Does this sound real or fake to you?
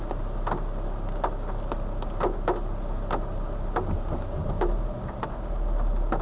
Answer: real